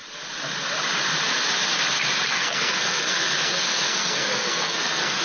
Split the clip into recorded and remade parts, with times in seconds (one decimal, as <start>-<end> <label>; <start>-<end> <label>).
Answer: 0.0-2.3 recorded; 2.3-5.2 remade